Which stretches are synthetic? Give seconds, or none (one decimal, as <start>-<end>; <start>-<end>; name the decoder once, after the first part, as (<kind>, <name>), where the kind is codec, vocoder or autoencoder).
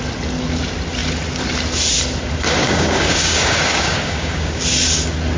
2.6-4.6 (codec, DAC)